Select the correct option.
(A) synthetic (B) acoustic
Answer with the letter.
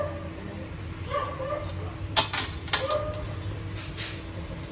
B